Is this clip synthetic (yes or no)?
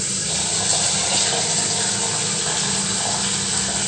no